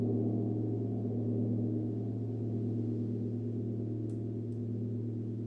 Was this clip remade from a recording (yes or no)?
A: no